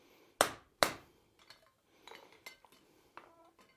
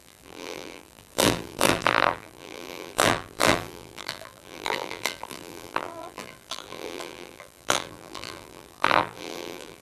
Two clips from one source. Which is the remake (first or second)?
second